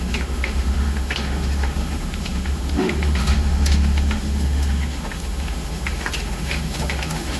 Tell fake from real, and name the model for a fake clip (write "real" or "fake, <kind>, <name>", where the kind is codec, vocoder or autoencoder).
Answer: fake, autoencoder, DAC-VAE